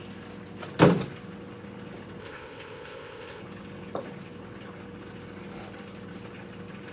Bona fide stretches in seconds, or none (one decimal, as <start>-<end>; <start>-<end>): 0.0-2.2; 3.4-6.9